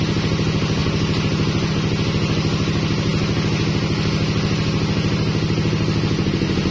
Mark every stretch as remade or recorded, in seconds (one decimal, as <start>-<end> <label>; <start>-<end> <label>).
0.0-6.7 recorded